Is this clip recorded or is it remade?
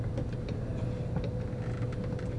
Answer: recorded